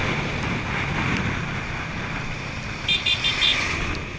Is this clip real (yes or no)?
yes